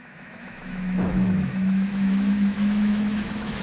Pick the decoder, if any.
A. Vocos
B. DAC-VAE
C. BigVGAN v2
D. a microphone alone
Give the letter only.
B